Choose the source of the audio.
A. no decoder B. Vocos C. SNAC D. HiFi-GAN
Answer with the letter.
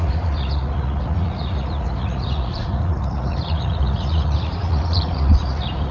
B